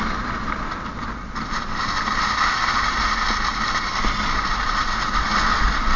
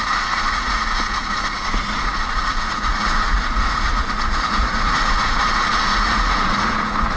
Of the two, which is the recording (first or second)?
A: first